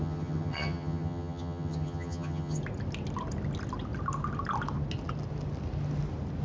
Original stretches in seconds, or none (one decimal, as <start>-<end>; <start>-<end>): 2.6-6.4